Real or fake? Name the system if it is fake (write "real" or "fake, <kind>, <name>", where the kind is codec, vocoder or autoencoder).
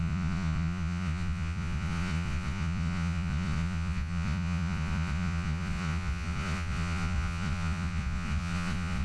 fake, vocoder, Vocos